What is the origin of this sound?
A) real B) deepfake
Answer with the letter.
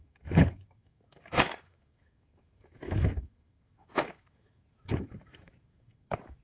B